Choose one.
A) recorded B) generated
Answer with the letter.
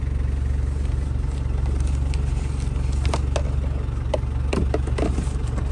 A